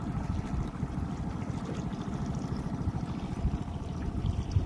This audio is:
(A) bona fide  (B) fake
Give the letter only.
A